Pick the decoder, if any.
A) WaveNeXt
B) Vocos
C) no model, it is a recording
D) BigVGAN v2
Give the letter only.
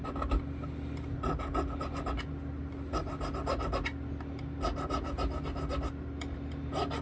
C